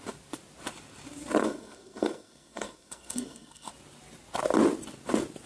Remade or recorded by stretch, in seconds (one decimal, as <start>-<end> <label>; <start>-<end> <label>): 0.0-1.4 recorded; 1.4-3.7 remade; 3.7-5.5 recorded